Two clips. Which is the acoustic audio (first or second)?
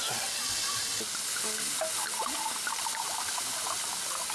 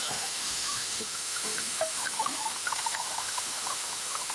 first